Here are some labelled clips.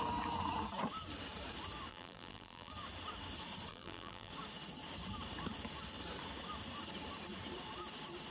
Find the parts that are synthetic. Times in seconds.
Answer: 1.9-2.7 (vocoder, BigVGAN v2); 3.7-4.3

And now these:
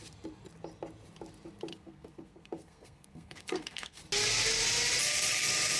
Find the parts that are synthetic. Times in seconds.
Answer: 1.7-4.0 (codec, SNAC)